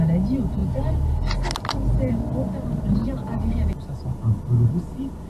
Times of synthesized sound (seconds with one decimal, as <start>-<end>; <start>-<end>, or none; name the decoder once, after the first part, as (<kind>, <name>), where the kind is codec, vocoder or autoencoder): none